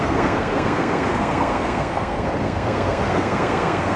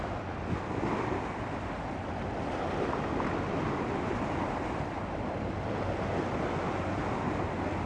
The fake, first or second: first